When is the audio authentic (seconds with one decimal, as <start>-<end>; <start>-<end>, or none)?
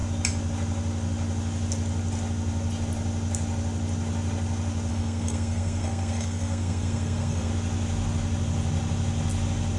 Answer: 0.0-4.9; 7.5-9.8